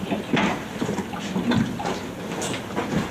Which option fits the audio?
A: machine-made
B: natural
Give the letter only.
B